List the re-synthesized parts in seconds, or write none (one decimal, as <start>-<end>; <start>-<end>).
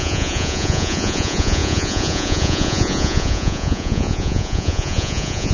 0.0-5.5